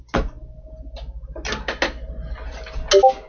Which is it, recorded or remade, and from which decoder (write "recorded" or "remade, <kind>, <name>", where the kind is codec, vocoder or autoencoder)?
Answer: recorded